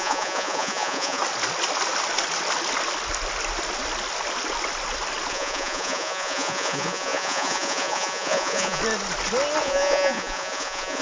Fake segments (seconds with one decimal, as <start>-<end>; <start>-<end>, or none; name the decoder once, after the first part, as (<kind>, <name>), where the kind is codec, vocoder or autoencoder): 0.0-1.2 (vocoder, Vocos); 5.3-8.8; 9.6-11.0

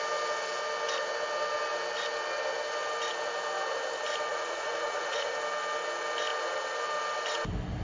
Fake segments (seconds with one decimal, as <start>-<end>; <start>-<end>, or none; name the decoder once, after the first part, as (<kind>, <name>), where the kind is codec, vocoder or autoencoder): 4.3-5.3 (vocoder, Vocos)

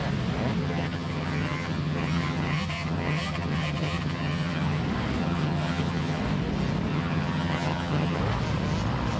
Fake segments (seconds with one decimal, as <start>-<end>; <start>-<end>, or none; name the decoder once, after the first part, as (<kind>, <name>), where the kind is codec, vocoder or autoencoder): 0.6-4.8 (vocoder, HiFi-GAN); 5.2-6.2; 6.9-8.2

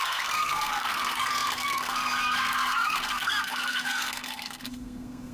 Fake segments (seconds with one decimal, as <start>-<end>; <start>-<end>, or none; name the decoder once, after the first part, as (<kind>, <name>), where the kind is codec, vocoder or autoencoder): 0.0-5.3 (codec, SNAC)

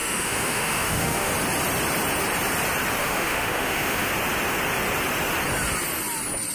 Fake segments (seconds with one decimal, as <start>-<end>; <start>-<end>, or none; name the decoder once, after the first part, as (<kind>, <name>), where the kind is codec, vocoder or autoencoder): 0.0-1.3 (autoencoder, DAC-VAE); 3.0-4.1